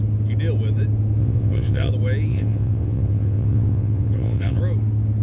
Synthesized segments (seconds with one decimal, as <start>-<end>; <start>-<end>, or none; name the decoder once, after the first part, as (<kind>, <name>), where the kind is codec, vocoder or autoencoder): 1.2-1.9 (vocoder, WaveNeXt); 2.3-4.6